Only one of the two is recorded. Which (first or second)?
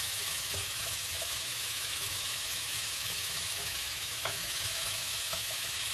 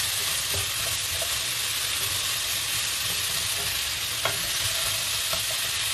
second